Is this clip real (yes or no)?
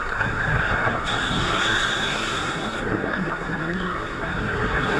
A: no